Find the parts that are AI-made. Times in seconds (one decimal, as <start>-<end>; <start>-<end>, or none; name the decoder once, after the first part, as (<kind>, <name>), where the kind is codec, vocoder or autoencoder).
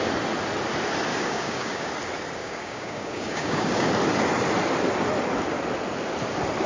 1.1-1.9 (codec, DAC); 2.4-3.9